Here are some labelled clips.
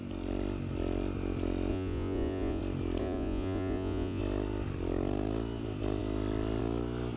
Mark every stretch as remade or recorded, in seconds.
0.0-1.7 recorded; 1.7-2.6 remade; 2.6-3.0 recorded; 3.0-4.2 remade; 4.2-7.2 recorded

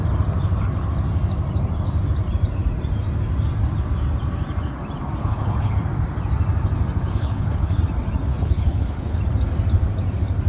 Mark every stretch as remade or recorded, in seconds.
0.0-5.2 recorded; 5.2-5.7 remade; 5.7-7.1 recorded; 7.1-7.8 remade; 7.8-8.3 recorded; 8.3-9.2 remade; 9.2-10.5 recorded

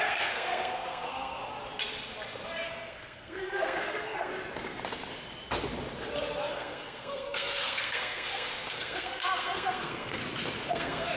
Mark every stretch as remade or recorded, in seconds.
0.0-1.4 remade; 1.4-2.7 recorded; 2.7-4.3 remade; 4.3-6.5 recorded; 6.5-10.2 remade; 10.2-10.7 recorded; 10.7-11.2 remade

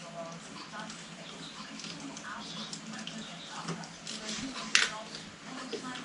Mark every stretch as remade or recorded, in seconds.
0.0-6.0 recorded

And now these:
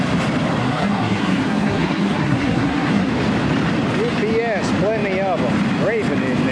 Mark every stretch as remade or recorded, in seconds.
0.0-0.6 recorded; 0.6-3.1 remade; 3.1-6.5 recorded

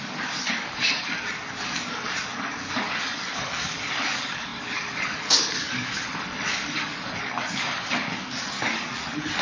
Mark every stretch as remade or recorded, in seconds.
0.0-9.4 remade

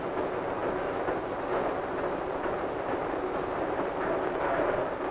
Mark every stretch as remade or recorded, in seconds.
0.0-5.1 recorded